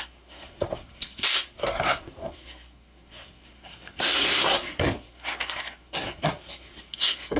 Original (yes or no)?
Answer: no